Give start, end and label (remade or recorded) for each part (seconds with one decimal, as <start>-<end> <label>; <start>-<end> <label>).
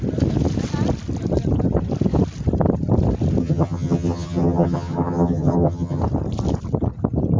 0.0-3.4 recorded; 3.4-6.0 remade; 6.0-7.4 recorded